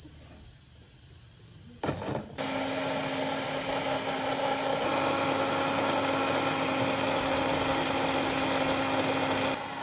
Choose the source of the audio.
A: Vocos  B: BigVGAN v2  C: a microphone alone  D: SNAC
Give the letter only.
C